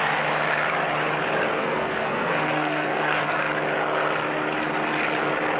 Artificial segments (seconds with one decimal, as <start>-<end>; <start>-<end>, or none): 1.6-3.3